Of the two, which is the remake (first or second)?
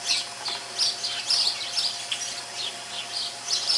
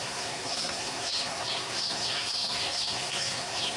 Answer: second